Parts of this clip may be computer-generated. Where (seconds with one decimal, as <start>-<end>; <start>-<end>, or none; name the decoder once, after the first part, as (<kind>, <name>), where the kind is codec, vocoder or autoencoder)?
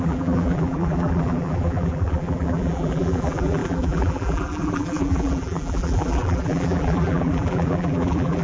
0.0-8.4 (vocoder, BigVGAN v2)